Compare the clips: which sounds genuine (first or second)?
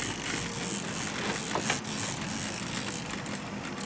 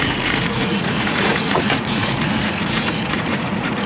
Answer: first